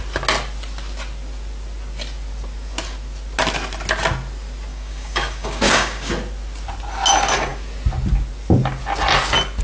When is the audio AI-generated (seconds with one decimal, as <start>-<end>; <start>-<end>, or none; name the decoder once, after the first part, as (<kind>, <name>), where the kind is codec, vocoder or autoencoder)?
4.7-6.1 (codec, DAC)